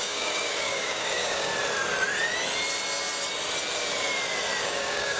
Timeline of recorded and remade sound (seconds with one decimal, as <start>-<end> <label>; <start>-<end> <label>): 0.0-1.5 remade; 1.5-4.6 recorded; 4.6-5.2 remade